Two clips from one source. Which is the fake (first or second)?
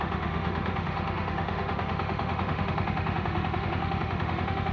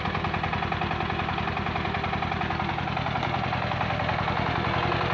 first